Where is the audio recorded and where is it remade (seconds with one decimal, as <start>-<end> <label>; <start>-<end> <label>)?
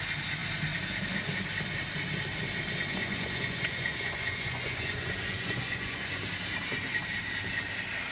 0.0-2.9 recorded; 2.9-6.2 remade; 6.2-8.1 recorded